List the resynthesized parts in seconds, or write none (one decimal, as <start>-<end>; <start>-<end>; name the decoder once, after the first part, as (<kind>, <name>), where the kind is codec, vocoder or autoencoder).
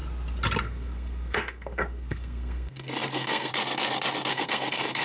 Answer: 0.6-3.5 (codec, SNAC); 4.3-5.0